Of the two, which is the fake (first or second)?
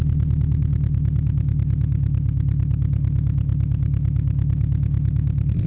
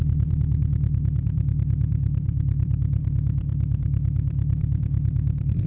second